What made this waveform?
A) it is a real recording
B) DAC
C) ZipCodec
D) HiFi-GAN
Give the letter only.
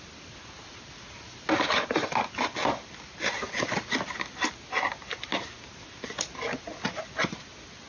A